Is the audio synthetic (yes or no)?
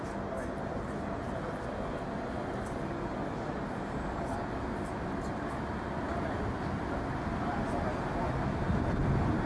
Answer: no